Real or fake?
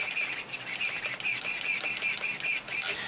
real